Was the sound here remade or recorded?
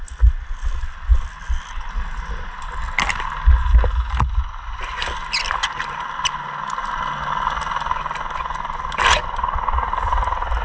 recorded